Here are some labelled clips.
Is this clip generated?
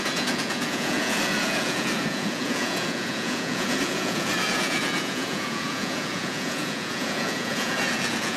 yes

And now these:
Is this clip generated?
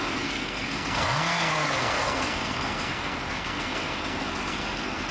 yes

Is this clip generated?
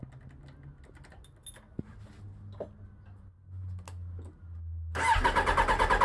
no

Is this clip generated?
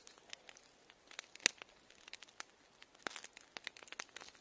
no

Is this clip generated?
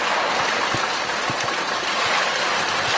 no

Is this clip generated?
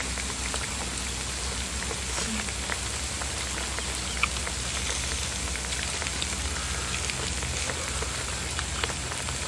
no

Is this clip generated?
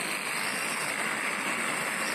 no